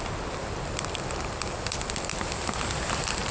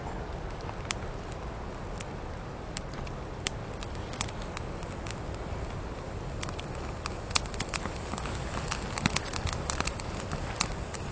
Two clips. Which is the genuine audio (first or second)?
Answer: second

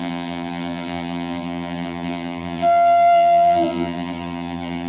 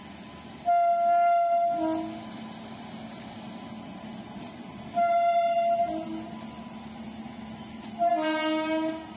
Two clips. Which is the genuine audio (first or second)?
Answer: second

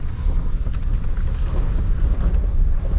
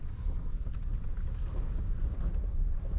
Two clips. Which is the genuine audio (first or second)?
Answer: first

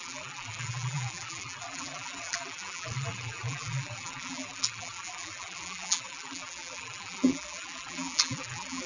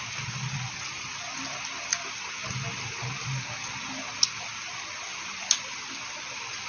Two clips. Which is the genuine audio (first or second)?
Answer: second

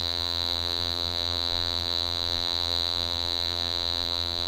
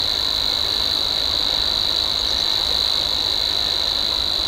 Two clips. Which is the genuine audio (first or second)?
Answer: second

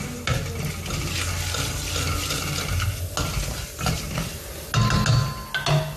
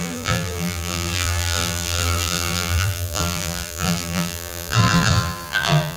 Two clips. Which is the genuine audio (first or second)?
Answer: first